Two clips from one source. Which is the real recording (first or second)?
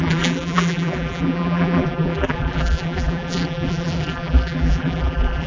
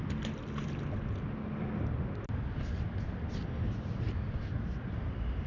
second